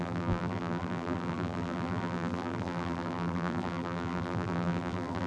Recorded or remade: remade